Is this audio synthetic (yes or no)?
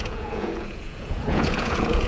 yes